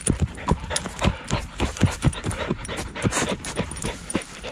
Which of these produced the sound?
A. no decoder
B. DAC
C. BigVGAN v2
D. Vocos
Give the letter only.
C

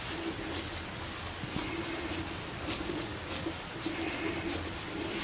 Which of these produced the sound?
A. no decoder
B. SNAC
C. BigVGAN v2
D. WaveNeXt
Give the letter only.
C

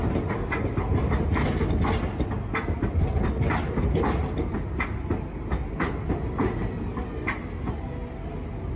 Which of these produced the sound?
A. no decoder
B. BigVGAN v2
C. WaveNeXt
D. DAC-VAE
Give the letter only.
A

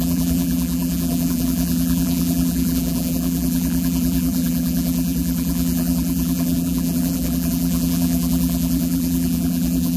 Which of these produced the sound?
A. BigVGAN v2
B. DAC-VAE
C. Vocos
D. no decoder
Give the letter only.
A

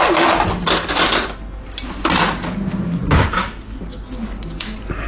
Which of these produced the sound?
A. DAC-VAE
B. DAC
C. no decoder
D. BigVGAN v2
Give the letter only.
C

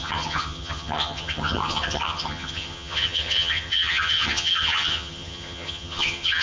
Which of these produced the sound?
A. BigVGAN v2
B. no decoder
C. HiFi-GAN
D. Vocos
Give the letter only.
C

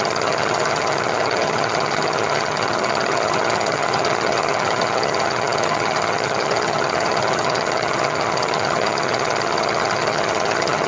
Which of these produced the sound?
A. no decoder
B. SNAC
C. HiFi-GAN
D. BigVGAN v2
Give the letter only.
C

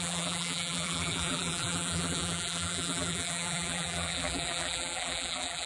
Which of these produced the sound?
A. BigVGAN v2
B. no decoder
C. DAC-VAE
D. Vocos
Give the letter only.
A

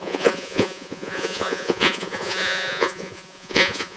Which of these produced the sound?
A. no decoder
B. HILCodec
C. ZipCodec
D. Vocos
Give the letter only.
D